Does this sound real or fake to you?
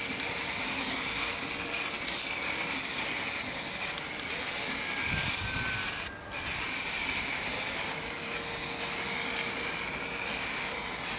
real